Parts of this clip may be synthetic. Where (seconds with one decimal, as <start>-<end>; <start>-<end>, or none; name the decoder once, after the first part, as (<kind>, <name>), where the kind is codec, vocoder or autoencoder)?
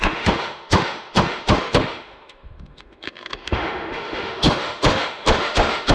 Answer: 0.0-5.9 (autoencoder, DAC-VAE)